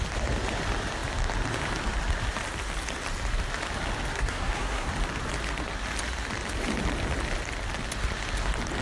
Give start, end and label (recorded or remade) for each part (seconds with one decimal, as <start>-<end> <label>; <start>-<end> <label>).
0.0-4.1 recorded; 4.1-4.9 remade; 4.9-8.8 recorded